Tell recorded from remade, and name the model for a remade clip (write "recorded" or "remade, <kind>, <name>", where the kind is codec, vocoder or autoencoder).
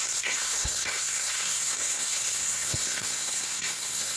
remade, codec, SNAC